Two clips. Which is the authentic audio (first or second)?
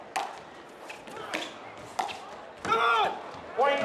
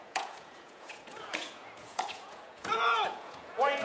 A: first